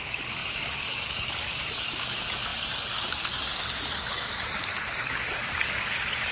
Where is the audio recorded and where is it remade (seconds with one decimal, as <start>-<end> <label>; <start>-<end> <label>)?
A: 0.0-6.3 remade